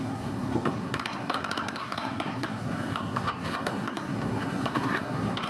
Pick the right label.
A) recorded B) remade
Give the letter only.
B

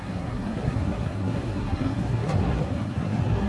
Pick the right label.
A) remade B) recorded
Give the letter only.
A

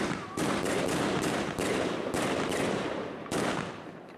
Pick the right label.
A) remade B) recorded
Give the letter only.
B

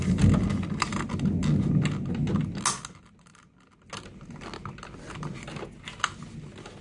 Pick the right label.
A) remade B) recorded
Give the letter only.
B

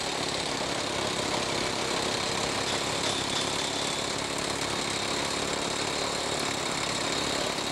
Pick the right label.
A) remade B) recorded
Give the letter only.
B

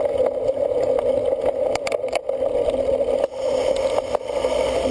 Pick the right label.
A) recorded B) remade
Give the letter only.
A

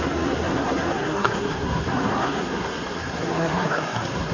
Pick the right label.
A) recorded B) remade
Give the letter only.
B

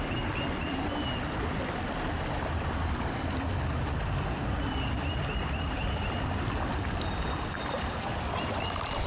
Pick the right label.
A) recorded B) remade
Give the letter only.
A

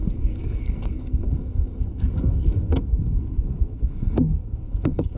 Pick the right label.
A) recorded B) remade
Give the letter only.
B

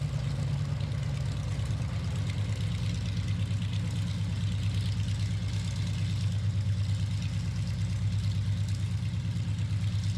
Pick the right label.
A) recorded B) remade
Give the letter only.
A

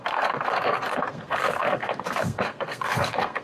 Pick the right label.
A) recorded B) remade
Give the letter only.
B